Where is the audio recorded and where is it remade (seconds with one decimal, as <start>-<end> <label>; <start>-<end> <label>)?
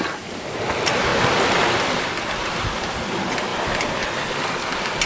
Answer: 0.0-1.1 recorded; 1.1-2.0 remade; 2.0-3.5 recorded; 3.5-4.0 remade; 4.0-5.1 recorded